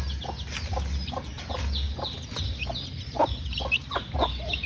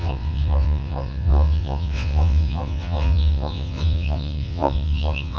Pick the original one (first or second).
first